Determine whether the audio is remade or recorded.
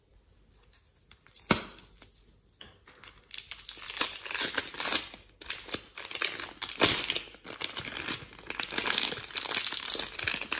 recorded